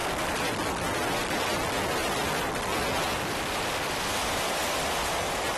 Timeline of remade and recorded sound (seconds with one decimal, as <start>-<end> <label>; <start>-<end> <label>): 0.0-2.7 recorded; 2.7-5.0 remade; 5.0-5.6 recorded